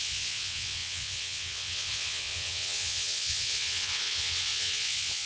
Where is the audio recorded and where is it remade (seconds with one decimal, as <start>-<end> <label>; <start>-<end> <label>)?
0.0-5.3 remade